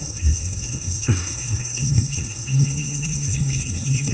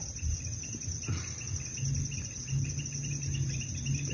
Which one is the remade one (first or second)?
first